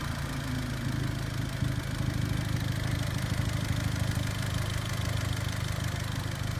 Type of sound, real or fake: real